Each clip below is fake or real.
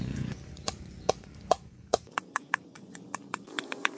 fake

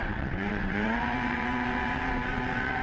fake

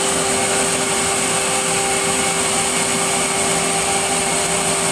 real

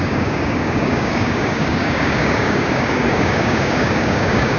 fake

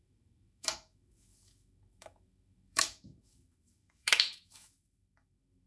fake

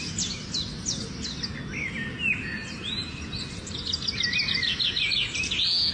real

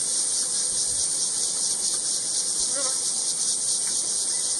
real